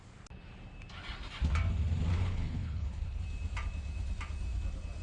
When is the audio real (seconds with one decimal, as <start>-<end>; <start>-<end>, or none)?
0.0-2.1; 3.2-5.0